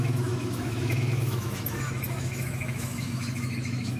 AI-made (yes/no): yes